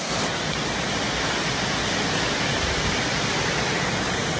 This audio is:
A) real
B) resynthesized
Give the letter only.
A